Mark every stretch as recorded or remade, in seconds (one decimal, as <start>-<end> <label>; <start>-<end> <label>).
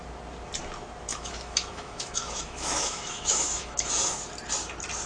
0.0-1.1 recorded; 1.1-4.2 remade; 4.2-5.1 recorded